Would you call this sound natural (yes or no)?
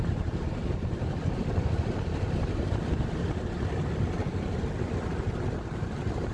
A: yes